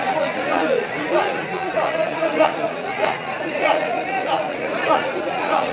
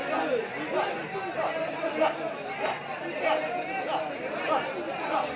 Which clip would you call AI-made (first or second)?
first